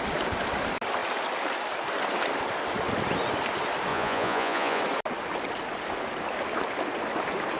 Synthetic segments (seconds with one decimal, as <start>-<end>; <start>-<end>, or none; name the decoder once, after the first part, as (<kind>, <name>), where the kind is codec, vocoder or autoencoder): 3.9-4.8 (vocoder, Vocos)